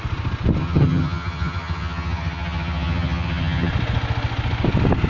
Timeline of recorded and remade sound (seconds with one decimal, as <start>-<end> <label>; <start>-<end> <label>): 0.0-0.6 recorded; 0.6-3.7 remade; 3.7-5.1 recorded